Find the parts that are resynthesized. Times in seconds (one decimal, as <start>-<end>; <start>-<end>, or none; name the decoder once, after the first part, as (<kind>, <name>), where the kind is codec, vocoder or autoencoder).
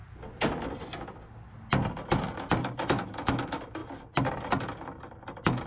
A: none